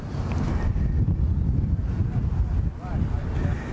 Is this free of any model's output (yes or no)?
yes